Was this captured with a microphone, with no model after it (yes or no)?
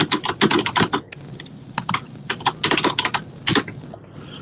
yes